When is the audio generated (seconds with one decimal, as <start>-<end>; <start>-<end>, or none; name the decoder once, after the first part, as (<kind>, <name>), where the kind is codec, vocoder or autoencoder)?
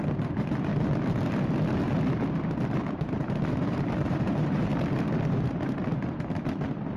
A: 0.0-0.7 (vocoder, BigVGAN v2); 3.5-4.7